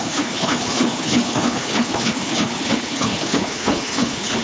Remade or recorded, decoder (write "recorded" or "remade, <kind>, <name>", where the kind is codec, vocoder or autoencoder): remade, codec, HILCodec